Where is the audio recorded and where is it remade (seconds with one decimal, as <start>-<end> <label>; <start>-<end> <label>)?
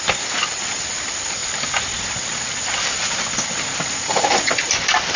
0.0-5.2 recorded